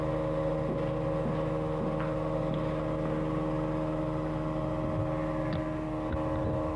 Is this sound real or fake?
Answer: real